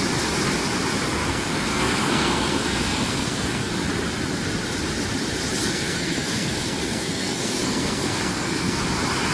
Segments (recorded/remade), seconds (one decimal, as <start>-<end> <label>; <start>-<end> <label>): 0.0-1.2 recorded; 1.2-3.7 remade; 3.7-5.6 recorded; 5.6-8.8 remade; 8.8-9.3 recorded